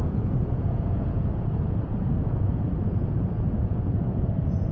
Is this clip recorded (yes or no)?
no